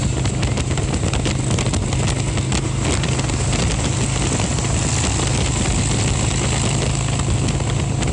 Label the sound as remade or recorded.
recorded